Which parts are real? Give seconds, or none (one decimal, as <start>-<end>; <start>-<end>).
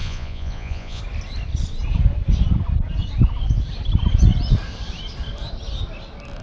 1.0-6.4